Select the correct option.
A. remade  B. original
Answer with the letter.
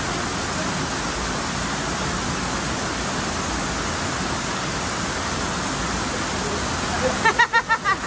B